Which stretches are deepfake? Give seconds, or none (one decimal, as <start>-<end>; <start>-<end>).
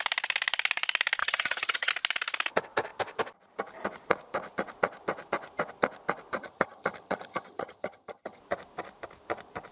1.2-1.9; 6.4-8.4